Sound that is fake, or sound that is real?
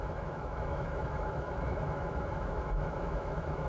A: fake